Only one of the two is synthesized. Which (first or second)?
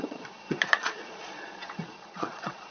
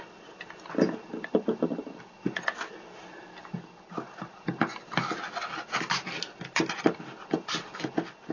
first